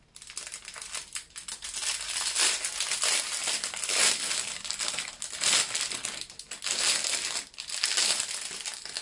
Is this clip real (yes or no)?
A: yes